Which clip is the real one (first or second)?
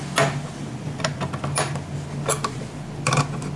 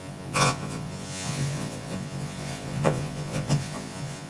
first